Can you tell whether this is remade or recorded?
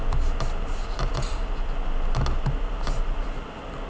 recorded